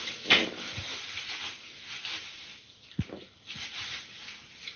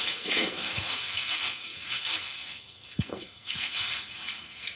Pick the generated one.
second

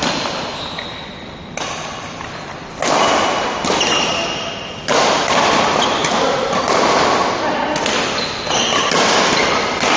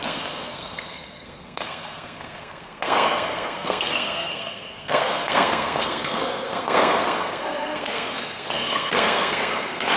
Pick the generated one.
second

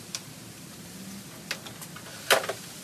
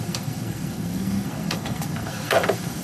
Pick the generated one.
second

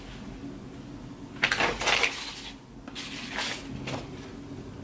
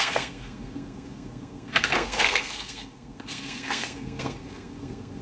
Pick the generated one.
second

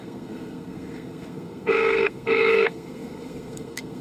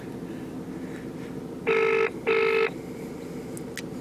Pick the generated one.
first